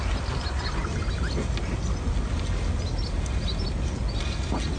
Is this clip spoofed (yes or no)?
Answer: no